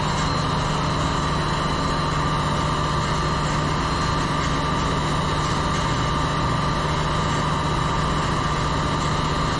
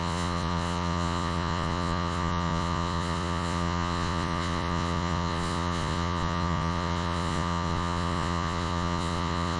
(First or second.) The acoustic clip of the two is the first